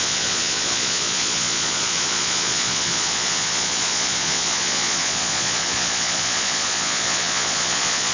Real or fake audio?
fake